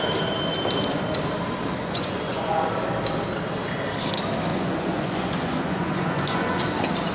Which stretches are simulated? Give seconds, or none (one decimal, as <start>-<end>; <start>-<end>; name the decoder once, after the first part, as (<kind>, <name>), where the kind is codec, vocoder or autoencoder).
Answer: 1.8-2.7 (vocoder, Vocos); 4.5-6.6